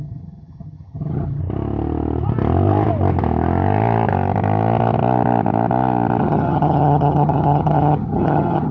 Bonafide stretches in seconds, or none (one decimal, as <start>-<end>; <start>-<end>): 1.4-6.2